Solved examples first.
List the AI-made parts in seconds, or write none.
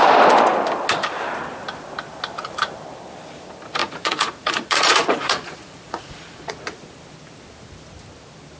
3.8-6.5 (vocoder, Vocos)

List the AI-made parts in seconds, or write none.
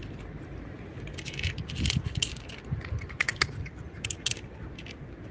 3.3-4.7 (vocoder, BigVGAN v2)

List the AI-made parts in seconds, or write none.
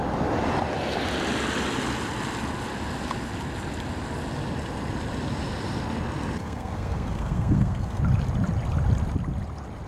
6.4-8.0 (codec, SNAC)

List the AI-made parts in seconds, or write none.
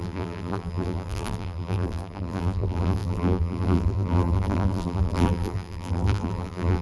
0.0-6.8 (vocoder, BigVGAN v2)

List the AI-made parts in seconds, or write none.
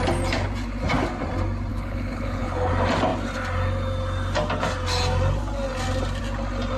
1.7-2.7 (codec, HILCodec)